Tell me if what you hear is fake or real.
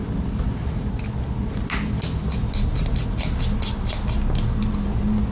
real